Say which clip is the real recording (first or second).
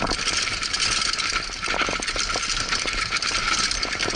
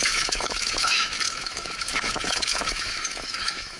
first